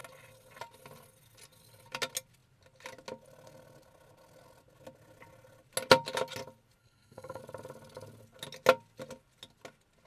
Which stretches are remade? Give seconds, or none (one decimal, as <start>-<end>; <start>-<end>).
6.8-7.4